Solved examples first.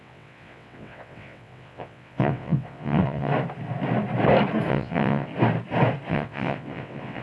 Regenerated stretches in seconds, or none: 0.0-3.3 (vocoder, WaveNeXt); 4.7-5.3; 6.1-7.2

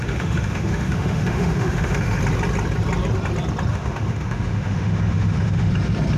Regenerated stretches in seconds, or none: 0.0-2.2 (autoencoder, DAC-VAE); 3.7-5.7

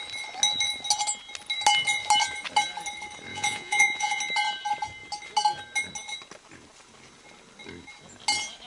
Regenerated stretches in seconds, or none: 3.3-4.2 (vocoder, Vocos)